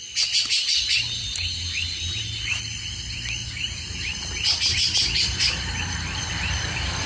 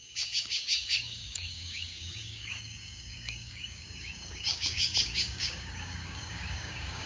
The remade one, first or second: second